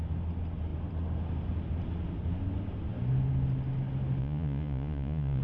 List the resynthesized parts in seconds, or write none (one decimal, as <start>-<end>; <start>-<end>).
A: 4.2-5.4